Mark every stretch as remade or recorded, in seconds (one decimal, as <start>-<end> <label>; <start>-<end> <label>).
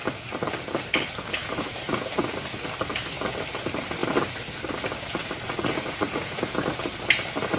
0.0-1.4 recorded; 1.4-2.1 remade; 2.1-5.2 recorded; 5.2-6.4 remade; 6.4-7.6 recorded